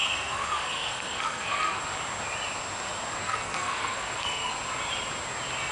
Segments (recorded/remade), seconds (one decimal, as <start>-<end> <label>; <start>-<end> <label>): 0.0-1.8 remade; 1.8-3.2 recorded; 3.2-4.5 remade; 4.5-5.7 recorded